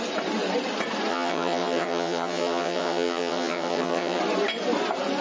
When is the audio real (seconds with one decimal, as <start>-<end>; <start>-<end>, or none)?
0.0-1.1; 4.2-5.2